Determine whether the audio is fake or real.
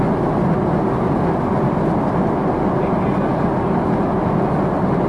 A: real